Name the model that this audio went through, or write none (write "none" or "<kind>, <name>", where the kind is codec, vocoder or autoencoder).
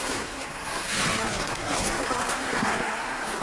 codec, SNAC